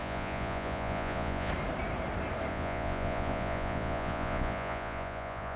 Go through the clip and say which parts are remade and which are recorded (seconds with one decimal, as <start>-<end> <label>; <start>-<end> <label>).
0.0-1.5 remade; 1.5-2.5 recorded; 2.5-5.6 remade

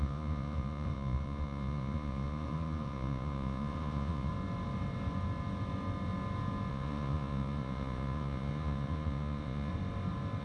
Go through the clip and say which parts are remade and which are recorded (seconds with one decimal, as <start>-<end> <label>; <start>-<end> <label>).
0.0-4.3 remade; 4.3-6.7 recorded; 6.7-9.7 remade; 9.7-10.4 recorded